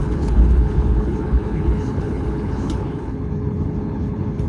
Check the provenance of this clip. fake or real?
fake